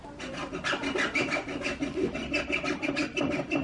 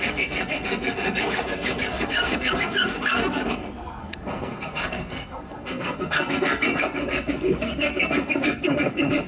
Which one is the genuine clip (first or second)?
first